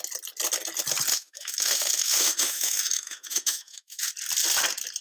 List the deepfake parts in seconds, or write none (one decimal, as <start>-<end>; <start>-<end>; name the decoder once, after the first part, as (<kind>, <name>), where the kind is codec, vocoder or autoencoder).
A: 1.1-4.1 (autoencoder, DAC-VAE)